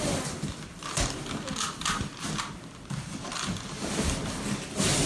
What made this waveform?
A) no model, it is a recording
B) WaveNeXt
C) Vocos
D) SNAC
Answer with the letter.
A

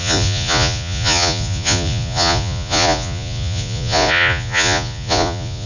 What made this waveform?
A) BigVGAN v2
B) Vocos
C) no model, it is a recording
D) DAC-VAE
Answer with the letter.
B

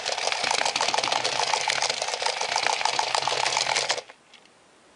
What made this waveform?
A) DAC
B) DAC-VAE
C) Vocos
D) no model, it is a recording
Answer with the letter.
D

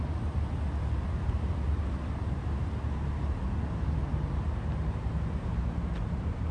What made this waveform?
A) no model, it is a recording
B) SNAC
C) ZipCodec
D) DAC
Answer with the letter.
A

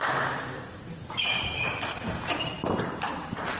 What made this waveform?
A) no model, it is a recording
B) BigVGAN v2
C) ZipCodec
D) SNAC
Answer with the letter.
B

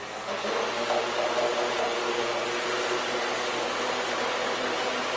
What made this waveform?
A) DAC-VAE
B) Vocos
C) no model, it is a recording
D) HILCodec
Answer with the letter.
C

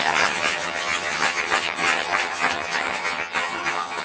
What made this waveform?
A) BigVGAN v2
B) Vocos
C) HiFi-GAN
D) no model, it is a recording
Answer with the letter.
C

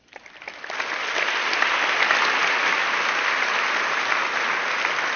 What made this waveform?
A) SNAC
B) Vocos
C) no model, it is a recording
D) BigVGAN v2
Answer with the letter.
C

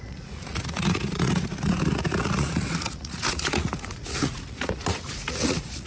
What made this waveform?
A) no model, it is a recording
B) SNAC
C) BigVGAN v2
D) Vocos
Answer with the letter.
D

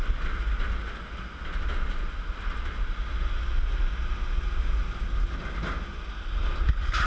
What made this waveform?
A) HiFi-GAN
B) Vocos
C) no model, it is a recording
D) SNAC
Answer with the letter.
C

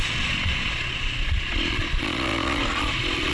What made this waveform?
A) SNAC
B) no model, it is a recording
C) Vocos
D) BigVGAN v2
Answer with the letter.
C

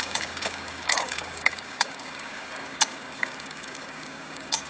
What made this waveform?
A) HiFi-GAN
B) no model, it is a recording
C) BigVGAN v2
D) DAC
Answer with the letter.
D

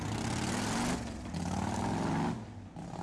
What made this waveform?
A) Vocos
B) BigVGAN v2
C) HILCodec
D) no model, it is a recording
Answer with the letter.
D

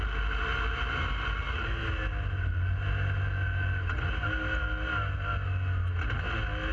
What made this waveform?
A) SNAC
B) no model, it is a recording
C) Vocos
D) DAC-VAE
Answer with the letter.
B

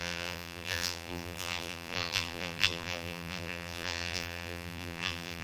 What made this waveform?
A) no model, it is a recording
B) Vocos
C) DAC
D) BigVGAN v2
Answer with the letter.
D